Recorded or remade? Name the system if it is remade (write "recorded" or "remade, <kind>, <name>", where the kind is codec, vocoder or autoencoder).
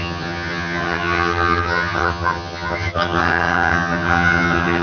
remade, vocoder, HiFi-GAN